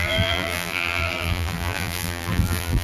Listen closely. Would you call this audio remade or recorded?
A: remade